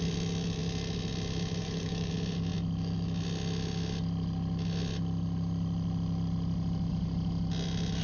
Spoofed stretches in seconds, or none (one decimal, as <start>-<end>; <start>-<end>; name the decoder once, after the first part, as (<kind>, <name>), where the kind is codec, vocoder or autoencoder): 1.6-2.1 (codec, DAC)